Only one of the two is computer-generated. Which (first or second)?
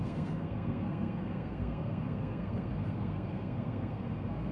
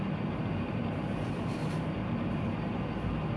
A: first